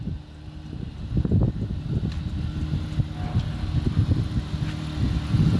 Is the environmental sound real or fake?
real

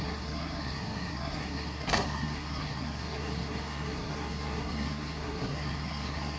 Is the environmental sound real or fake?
fake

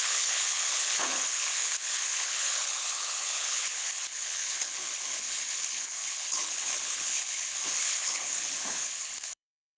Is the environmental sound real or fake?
fake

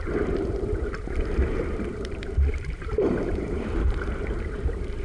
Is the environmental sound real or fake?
fake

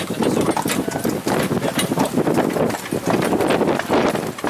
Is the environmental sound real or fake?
real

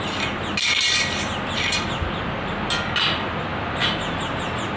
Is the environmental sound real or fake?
real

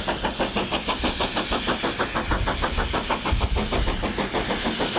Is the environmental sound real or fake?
real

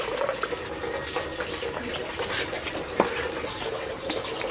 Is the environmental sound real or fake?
real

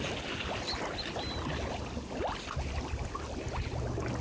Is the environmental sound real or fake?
real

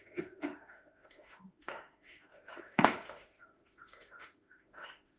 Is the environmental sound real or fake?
fake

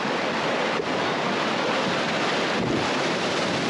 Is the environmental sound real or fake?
real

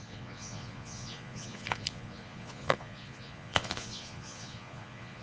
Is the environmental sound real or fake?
fake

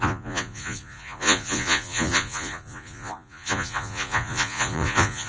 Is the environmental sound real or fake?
fake